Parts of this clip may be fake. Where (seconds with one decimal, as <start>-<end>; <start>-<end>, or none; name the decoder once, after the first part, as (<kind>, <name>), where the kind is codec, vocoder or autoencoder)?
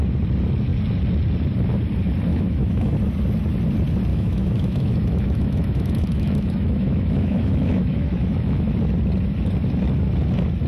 2.3-3.0 (autoencoder, DAC-VAE); 4.1-8.7